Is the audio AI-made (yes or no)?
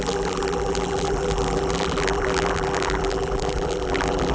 yes